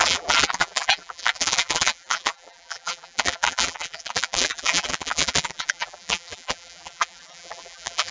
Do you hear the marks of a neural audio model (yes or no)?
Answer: yes